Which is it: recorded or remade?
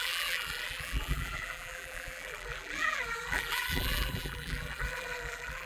remade